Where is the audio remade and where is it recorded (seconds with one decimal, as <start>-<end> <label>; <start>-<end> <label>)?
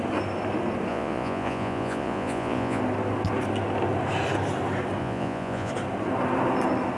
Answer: 0.0-0.9 recorded; 0.9-2.8 remade; 2.8-5.0 recorded; 5.0-5.7 remade; 5.7-7.0 recorded